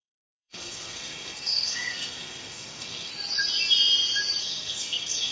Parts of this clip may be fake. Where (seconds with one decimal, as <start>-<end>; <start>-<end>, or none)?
0.0-3.1; 4.4-5.3